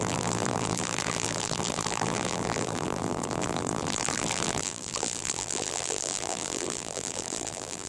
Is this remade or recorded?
remade